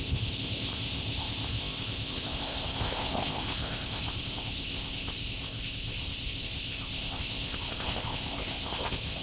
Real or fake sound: fake